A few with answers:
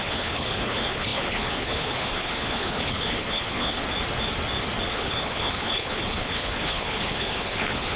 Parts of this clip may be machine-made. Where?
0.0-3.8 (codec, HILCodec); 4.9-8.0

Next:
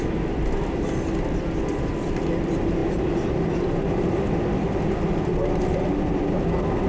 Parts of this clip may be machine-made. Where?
none